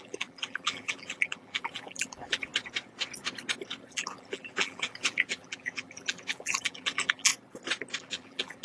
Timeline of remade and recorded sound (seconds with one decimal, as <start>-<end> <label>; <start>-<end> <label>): 0.0-2.5 remade; 2.5-3.9 recorded; 3.9-7.3 remade; 7.3-8.0 recorded; 8.0-8.6 remade

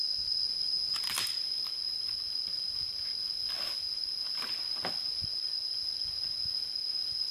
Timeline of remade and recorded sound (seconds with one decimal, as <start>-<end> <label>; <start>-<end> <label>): 0.0-7.3 recorded